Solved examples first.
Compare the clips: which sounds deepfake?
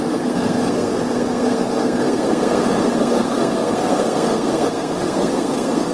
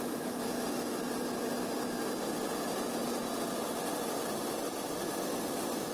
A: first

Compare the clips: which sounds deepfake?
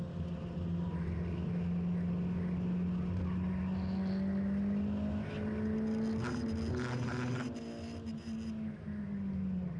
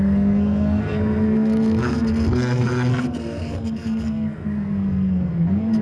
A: second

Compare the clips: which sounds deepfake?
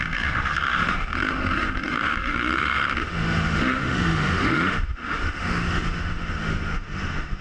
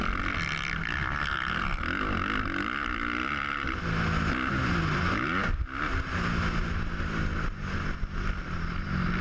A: first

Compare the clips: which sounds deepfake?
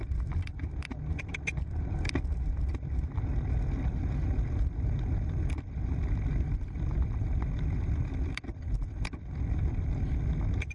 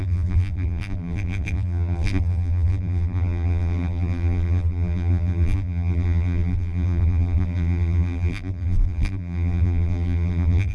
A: second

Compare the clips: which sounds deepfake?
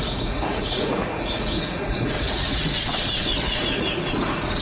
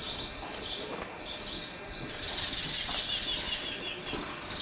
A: first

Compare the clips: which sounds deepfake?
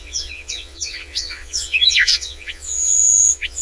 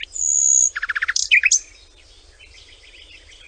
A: first